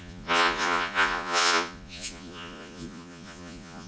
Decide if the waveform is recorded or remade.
remade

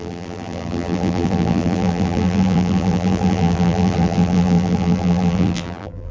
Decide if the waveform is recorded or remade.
remade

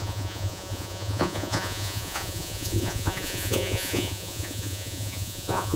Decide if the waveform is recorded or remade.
remade